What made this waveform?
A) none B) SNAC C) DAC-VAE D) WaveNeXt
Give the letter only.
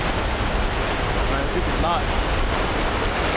A